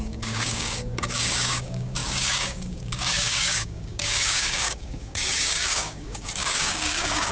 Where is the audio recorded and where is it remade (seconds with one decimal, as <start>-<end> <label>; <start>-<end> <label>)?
0.0-7.3 remade